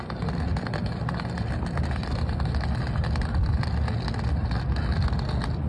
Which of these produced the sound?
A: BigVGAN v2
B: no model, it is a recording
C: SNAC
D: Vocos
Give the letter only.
B